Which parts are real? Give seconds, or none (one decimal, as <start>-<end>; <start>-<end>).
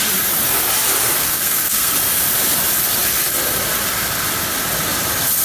0.0-1.2; 1.9-5.4